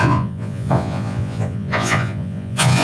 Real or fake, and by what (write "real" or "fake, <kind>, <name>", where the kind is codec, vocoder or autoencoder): fake, vocoder, Vocos